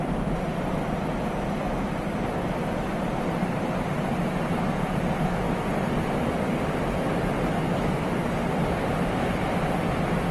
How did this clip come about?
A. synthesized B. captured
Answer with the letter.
A